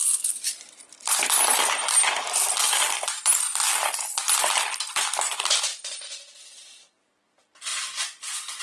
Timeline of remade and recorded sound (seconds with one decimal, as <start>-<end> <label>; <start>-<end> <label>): 0.0-1.2 remade; 1.2-5.7 recorded; 5.7-6.4 remade; 6.4-8.6 recorded